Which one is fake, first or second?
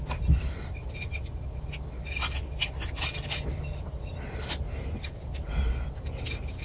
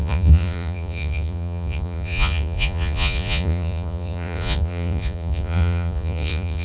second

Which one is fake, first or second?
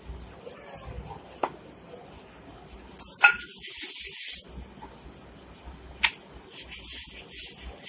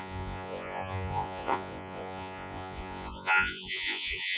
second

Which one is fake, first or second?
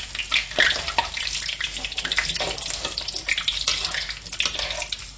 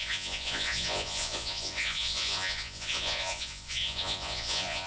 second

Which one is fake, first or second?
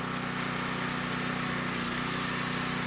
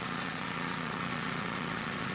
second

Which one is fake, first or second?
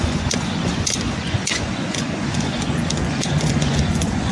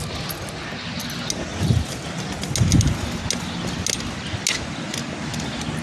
first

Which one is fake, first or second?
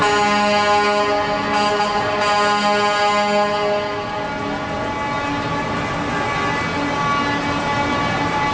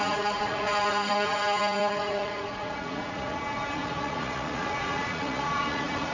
second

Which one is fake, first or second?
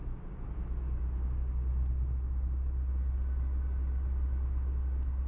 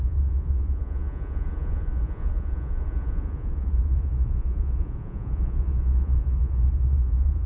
second